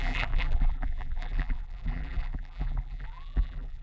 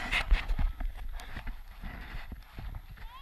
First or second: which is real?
second